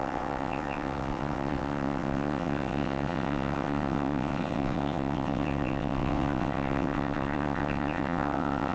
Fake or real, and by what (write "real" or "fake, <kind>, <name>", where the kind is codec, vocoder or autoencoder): fake, vocoder, WaveNeXt